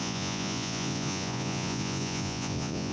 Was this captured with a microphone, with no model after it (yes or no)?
no